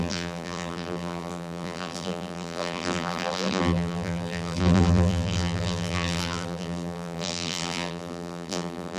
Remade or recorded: remade